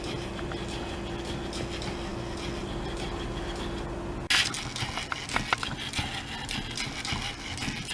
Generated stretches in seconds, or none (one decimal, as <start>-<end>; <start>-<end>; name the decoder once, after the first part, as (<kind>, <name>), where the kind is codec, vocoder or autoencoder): none

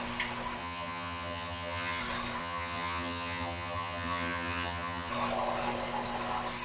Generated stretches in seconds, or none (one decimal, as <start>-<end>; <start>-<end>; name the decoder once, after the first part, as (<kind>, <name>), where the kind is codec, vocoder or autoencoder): 0.6-2.0 (vocoder, HiFi-GAN); 2.4-5.1

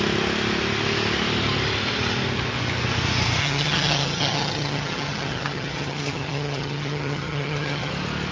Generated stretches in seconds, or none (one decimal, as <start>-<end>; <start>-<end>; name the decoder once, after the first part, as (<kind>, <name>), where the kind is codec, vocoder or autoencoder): 3.4-7.9 (vocoder, HiFi-GAN)

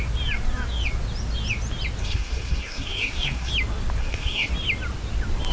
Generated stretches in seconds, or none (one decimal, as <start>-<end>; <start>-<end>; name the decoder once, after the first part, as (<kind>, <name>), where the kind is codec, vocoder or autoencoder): 2.0-3.5 (codec, SNAC); 4.0-4.5

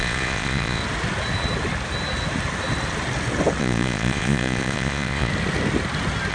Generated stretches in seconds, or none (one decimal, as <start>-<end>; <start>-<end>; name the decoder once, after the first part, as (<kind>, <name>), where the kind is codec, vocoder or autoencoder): 0.0-0.8 (vocoder, Vocos); 3.6-5.3